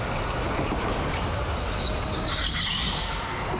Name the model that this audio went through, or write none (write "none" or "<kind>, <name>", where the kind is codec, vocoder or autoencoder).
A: none